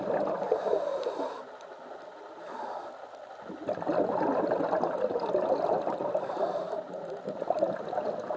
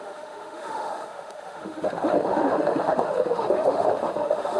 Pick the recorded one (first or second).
first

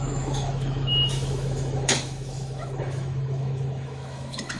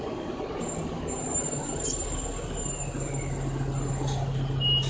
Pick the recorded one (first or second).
second